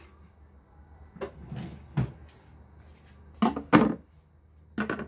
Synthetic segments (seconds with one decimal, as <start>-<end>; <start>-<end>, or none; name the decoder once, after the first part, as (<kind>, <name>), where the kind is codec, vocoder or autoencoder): none